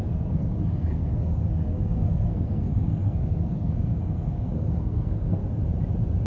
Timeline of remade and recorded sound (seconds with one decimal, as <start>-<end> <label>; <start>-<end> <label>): 0.0-5.4 remade; 5.4-6.3 recorded